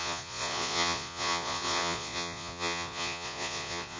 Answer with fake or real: fake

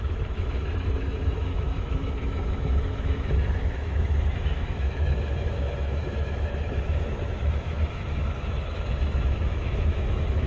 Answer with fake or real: fake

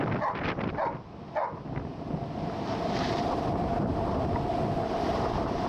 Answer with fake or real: real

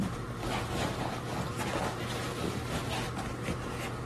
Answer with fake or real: real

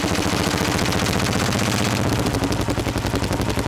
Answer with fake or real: real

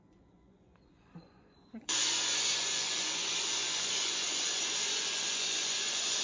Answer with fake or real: fake